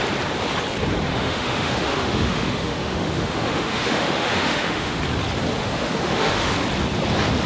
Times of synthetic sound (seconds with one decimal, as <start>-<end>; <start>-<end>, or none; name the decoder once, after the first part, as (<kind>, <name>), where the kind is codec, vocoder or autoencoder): 1.1-5.0 (autoencoder, DAC-VAE); 5.6-6.5